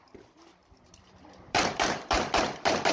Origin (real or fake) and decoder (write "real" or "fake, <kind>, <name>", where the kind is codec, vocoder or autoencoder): fake, vocoder, BigVGAN v2